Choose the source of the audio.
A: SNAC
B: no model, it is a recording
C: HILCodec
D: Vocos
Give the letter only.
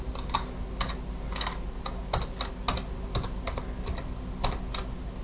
B